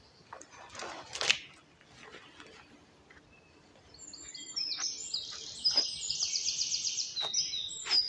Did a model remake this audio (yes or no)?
no